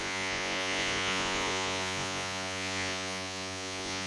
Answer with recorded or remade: remade